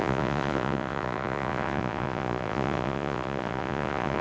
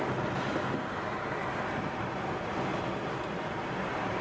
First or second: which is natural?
second